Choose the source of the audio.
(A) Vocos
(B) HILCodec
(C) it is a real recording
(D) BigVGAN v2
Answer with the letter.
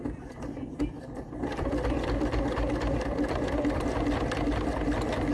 D